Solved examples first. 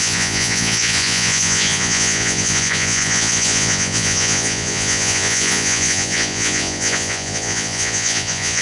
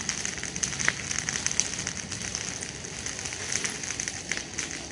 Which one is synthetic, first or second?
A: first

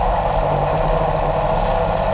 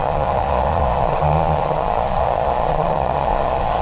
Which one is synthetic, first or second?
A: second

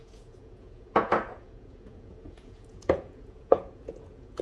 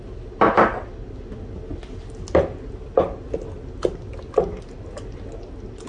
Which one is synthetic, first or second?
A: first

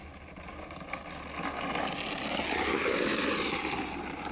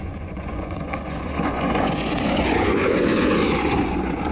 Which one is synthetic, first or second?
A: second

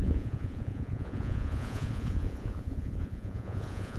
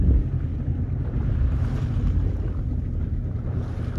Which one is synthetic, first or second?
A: first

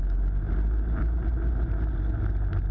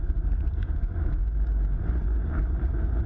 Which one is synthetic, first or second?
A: second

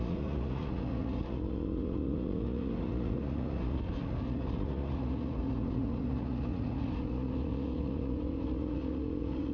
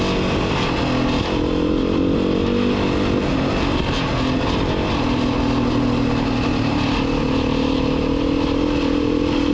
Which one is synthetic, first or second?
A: first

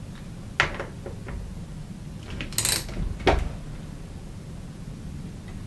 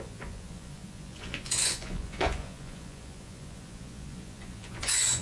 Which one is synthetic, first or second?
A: second